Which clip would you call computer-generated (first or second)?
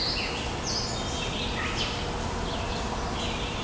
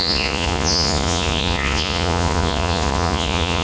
second